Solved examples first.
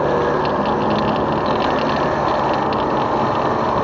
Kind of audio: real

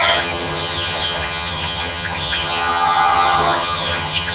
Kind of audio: fake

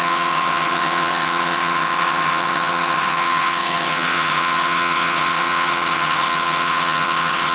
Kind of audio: fake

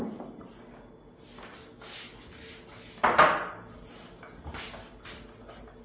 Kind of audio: real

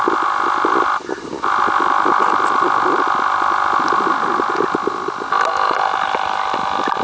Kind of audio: real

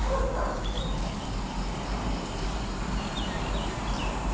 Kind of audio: real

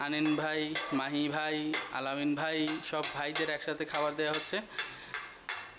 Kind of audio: real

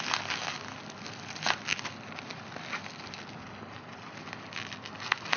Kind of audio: real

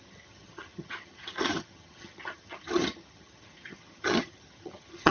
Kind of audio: fake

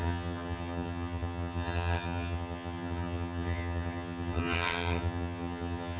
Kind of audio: fake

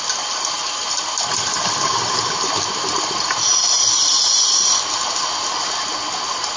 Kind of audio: real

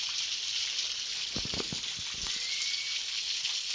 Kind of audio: real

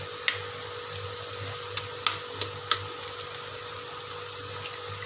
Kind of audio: real